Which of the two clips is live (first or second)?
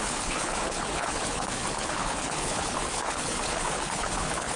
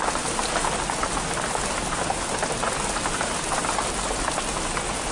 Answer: second